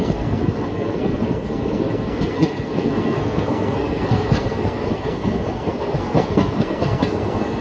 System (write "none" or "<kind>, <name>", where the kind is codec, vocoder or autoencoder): codec, SNAC